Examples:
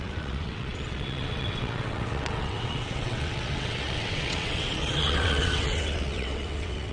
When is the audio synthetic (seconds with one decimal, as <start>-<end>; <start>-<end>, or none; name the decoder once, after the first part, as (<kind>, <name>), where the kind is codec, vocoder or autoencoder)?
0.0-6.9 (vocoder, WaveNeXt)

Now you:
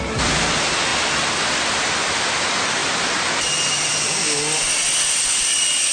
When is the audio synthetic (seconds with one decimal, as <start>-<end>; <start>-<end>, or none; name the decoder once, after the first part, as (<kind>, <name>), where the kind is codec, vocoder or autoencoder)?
none

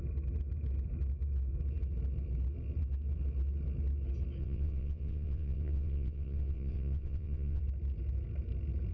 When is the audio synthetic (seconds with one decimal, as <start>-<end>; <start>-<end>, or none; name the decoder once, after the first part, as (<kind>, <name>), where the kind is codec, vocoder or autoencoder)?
4.4-7.6 (vocoder, WaveNeXt)

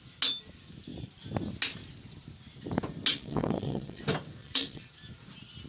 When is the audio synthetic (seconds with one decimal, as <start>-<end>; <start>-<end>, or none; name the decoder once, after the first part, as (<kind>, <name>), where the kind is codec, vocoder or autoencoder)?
3.1-4.0 (vocoder, WaveNeXt); 4.4-4.9

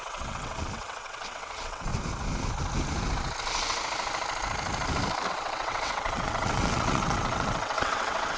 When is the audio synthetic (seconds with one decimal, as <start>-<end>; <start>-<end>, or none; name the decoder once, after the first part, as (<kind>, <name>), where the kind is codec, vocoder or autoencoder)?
0.0-1.9 (vocoder, WaveNeXt); 5.3-8.4

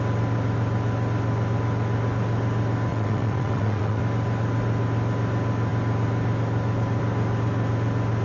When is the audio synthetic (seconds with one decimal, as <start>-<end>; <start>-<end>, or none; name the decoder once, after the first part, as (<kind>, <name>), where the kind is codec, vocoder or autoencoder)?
2.9-4.0 (vocoder, WaveNeXt)